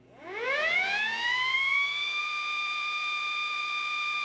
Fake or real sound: fake